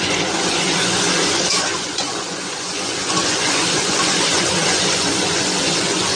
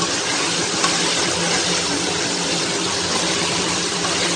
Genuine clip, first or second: second